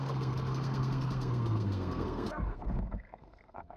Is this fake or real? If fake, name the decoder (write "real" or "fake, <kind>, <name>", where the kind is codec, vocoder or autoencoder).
fake, codec, SNAC